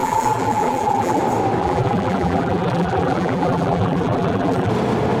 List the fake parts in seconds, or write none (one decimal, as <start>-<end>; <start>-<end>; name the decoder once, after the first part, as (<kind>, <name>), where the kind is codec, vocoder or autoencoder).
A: 0.0-1.2 (vocoder, BigVGAN v2); 1.6-4.7